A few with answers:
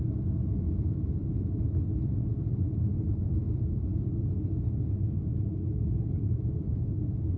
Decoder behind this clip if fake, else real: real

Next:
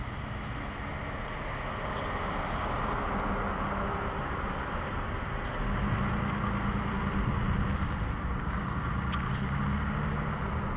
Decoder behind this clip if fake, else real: real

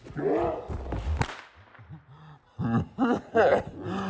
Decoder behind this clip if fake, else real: real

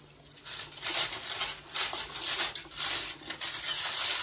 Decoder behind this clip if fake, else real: real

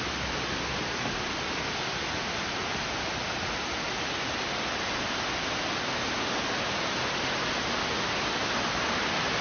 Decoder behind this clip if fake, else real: real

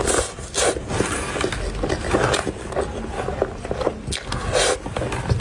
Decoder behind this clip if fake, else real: real